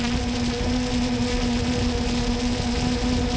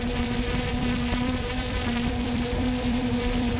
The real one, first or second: first